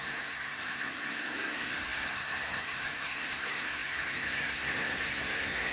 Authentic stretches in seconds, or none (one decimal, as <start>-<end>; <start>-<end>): none